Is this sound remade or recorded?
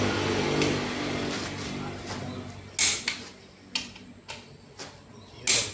recorded